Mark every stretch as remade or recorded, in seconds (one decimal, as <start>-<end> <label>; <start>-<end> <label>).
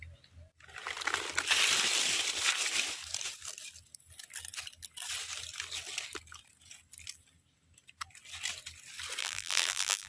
0.0-9.2 recorded; 9.2-10.1 remade